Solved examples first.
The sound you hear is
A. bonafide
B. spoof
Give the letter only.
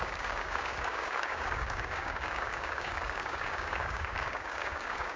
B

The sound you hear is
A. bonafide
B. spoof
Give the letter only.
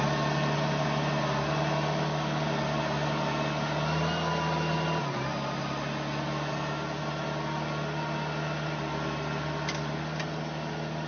A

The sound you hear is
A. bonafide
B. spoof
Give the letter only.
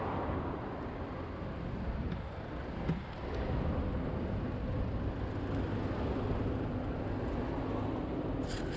A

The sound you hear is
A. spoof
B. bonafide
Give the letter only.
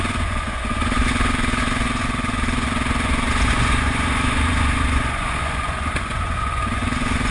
A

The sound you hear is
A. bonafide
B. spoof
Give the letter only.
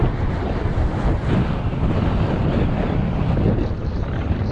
A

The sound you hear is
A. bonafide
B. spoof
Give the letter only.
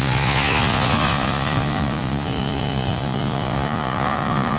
B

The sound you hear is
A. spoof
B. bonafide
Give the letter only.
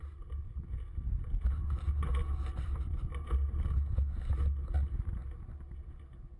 B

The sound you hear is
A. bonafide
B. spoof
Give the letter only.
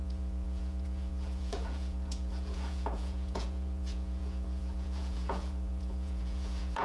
B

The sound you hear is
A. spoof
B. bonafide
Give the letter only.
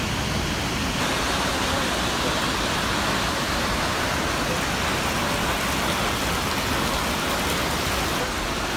B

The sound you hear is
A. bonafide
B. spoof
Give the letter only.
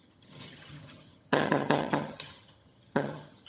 B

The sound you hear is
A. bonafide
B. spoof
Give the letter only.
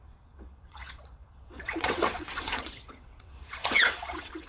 B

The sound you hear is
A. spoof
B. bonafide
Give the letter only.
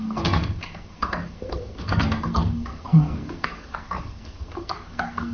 A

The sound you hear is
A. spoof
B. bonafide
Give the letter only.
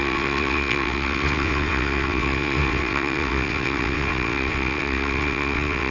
A